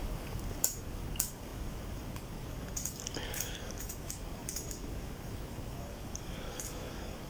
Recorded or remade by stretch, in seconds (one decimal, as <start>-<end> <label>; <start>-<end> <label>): 0.0-7.3 remade